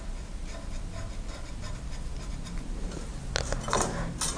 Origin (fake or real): real